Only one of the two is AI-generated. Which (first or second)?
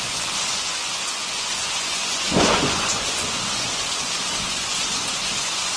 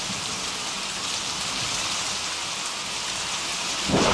first